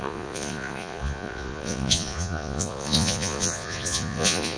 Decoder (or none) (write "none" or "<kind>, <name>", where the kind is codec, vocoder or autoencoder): vocoder, Vocos